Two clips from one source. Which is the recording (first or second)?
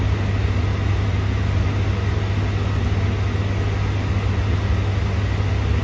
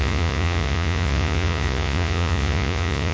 first